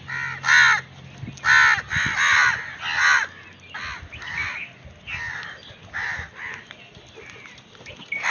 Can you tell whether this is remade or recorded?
recorded